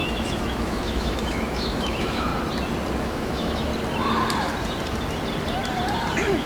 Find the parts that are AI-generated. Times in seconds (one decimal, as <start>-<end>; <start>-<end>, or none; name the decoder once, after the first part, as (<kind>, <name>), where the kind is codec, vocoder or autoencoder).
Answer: 0.0-2.3 (autoencoder, DAC-VAE); 3.0-3.7; 6.1-6.5